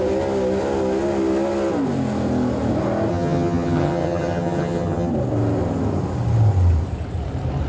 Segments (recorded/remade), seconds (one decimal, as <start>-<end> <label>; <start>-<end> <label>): 0.0-3.1 recorded; 3.1-5.1 remade; 5.1-7.7 recorded